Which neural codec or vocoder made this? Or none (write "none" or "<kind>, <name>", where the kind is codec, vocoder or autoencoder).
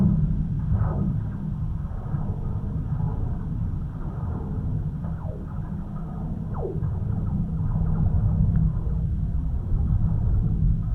none